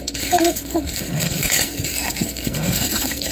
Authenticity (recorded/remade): remade